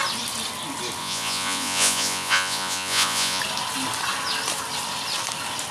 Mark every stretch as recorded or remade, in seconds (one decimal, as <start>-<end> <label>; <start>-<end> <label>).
0.0-1.0 recorded; 1.0-3.4 remade; 3.4-5.7 recorded